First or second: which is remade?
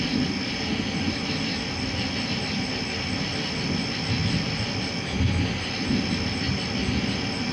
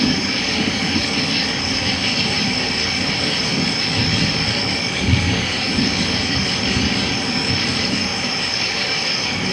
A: second